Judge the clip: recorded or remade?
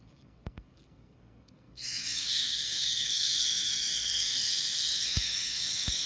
remade